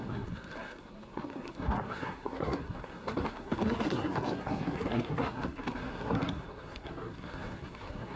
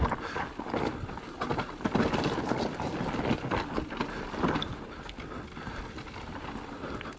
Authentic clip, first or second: second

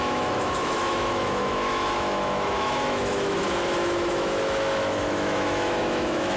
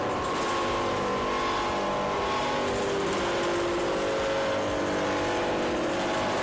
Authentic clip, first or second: second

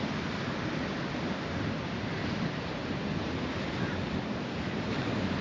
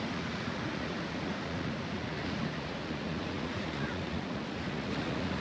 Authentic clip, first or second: first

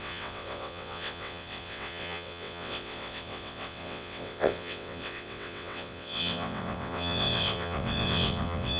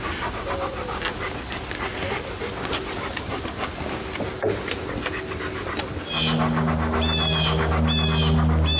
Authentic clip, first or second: second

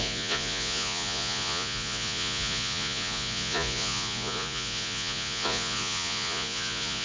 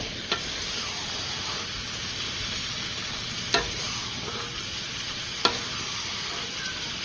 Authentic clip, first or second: second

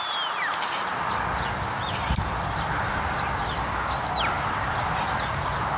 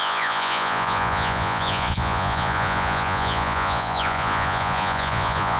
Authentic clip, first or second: first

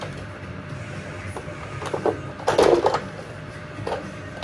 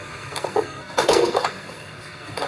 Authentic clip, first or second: first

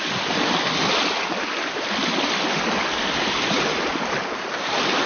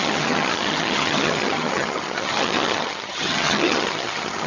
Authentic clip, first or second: first